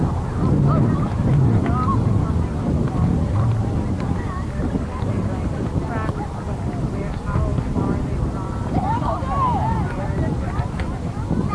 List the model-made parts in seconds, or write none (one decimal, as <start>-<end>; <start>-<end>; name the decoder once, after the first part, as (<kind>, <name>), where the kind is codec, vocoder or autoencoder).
none